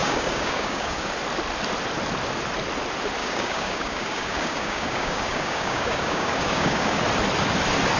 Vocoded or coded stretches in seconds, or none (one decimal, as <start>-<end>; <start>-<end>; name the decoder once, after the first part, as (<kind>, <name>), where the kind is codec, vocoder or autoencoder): 0.0-1.1 (codec, DAC); 3.2-7.0